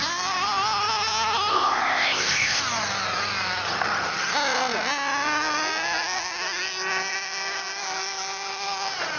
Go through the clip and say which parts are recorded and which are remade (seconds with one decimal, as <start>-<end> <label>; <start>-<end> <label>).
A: 0.0-1.5 recorded; 1.5-2.6 remade; 2.6-9.2 recorded